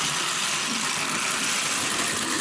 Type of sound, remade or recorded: recorded